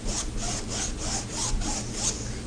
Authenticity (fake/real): real